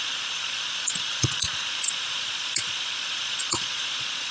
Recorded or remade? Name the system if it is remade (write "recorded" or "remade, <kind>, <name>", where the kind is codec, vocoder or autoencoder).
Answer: remade, vocoder, Vocos